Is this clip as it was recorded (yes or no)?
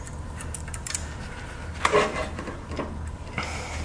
yes